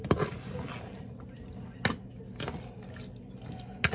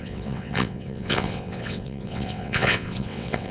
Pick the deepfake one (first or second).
second